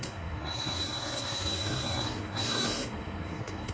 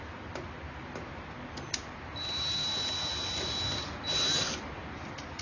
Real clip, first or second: second